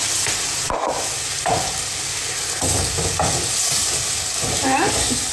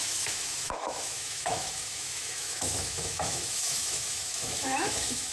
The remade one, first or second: second